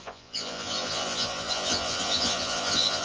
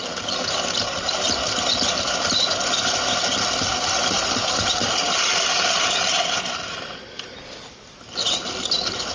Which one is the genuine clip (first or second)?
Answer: second